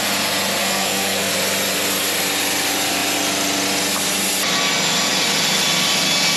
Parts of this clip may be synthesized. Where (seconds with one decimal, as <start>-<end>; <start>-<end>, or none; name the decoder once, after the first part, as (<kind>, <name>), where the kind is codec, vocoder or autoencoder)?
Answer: 0.6-1.3 (codec, SNAC)